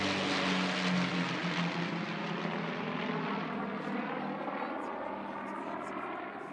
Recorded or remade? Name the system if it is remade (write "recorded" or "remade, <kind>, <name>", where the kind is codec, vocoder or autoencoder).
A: recorded